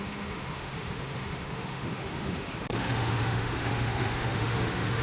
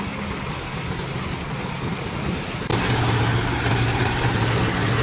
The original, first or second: second